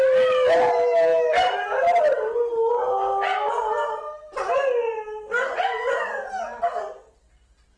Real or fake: real